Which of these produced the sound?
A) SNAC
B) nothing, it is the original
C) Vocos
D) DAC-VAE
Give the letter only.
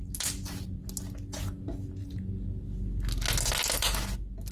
B